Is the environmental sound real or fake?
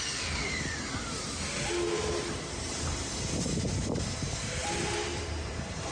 real